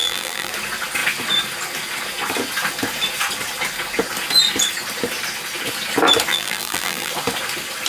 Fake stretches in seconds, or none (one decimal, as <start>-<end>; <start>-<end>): 0.0-0.5; 6.3-7.1